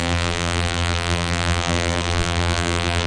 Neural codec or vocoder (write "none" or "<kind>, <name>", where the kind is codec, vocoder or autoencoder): vocoder, BigVGAN v2